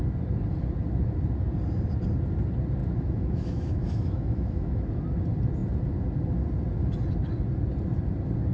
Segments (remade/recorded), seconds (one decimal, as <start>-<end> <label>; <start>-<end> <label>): 0.0-2.8 recorded; 2.8-5.0 remade; 5.0-8.5 recorded